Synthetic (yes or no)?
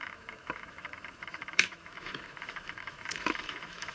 yes